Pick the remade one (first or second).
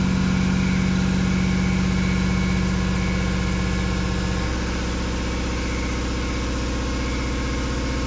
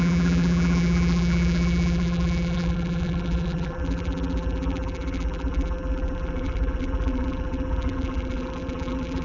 second